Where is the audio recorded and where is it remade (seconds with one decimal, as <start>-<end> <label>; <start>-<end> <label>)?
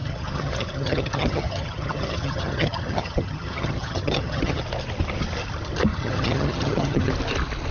0.0-4.6 remade; 4.6-5.9 recorded; 5.9-7.1 remade; 7.1-7.7 recorded